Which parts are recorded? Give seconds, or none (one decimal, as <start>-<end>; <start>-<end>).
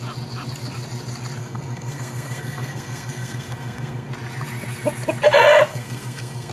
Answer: 0.0-1.4; 4.1-5.7